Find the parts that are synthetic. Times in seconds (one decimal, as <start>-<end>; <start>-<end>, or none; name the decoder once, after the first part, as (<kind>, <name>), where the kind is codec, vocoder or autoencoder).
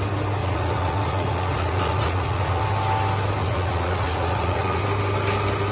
0.4-2.6 (vocoder, Vocos); 3.4-4.8